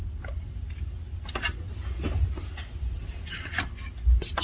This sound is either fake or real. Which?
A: real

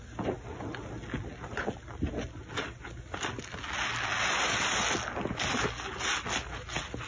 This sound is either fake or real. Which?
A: real